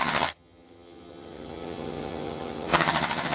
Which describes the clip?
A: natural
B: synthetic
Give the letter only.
B